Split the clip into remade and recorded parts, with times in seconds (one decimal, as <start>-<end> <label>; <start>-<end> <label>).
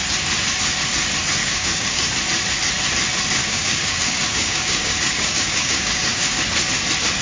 0.0-1.4 recorded; 1.4-2.1 remade; 2.1-3.4 recorded; 3.4-6.4 remade; 6.4-7.2 recorded